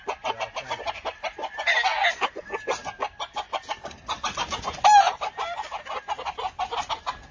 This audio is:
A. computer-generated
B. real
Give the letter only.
B